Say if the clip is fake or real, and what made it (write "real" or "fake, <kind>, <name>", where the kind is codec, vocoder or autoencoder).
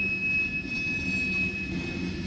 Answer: real